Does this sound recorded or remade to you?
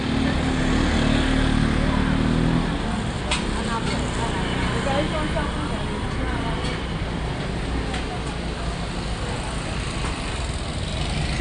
recorded